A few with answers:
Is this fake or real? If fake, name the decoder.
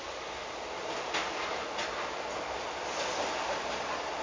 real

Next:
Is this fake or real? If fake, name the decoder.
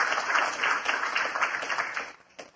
real